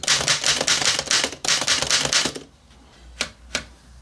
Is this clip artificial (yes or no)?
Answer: no